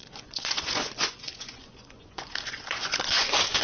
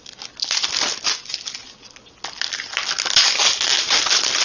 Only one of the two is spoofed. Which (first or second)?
first